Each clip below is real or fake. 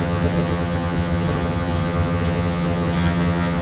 fake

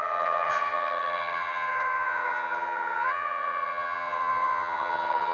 fake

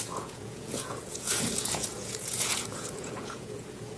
fake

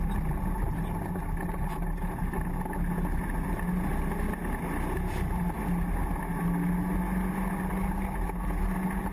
real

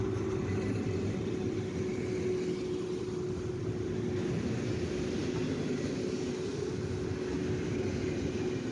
real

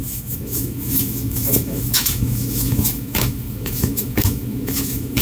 fake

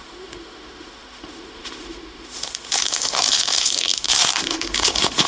fake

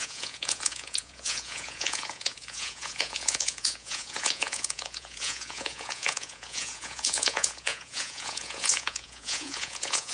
fake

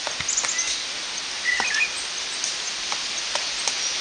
real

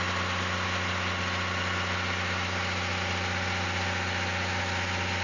real